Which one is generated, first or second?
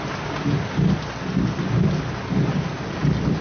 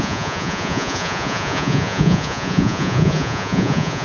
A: second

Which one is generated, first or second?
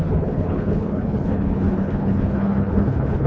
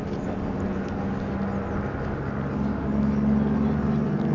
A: first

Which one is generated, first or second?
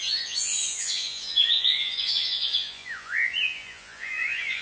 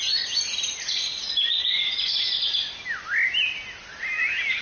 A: first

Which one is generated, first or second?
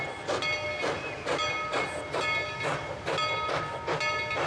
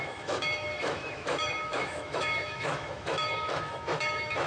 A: second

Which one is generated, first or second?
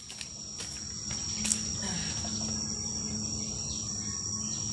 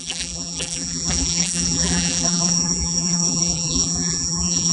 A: second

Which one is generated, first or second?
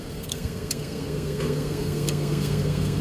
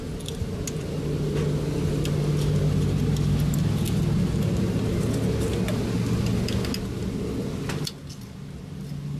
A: first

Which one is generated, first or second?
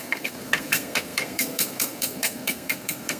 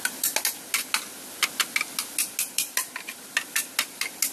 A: first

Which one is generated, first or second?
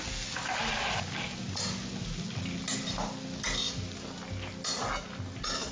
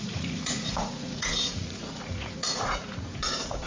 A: second